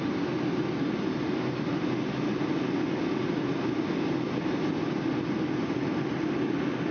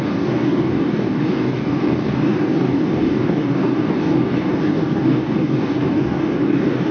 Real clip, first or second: first